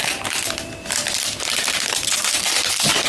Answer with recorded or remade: remade